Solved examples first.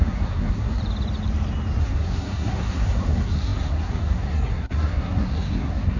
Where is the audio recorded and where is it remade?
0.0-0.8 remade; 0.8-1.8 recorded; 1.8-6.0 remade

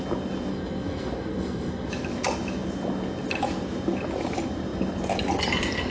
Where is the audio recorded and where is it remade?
0.0-0.5 recorded; 0.5-1.9 remade; 1.9-5.9 recorded

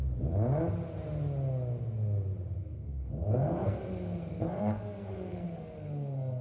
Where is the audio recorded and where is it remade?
0.0-2.6 recorded; 2.6-6.4 remade

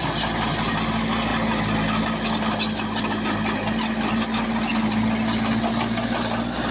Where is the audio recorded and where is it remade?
0.0-6.7 recorded

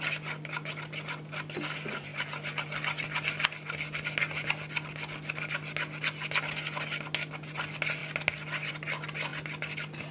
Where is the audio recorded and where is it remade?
0.0-10.1 recorded